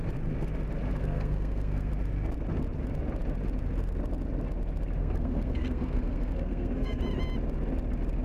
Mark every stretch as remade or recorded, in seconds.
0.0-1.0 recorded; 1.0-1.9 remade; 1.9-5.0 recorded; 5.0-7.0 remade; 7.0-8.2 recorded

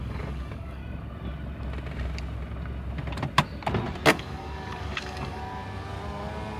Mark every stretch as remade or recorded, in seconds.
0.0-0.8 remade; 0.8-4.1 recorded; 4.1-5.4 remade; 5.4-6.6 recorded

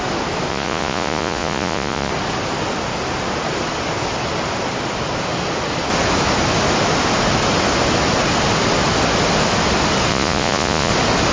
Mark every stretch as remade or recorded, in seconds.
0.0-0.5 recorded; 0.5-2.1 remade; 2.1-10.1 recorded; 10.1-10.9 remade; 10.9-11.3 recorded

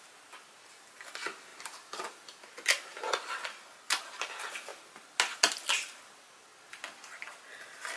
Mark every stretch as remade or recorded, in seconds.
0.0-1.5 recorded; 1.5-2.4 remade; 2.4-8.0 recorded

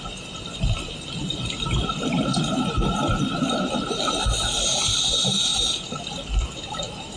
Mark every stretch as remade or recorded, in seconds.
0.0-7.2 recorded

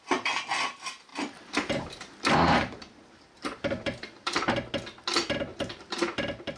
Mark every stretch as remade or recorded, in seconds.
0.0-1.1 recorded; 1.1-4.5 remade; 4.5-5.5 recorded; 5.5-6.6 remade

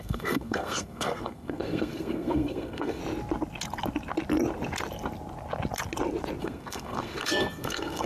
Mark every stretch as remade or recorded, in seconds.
0.0-3.0 remade; 3.0-6.4 recorded; 6.4-8.1 remade